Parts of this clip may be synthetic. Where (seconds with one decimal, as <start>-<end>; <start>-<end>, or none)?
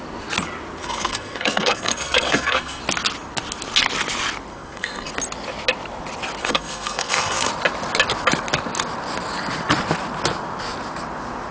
0.8-2.8; 4.5-5.1; 6.4-7.5